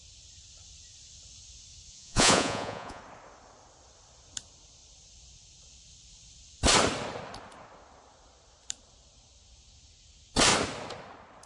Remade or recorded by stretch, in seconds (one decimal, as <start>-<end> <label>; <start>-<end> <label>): 0.0-1.9 recorded; 1.9-3.0 remade; 3.0-11.5 recorded